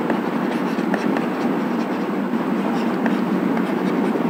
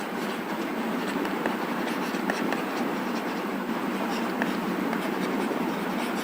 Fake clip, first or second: second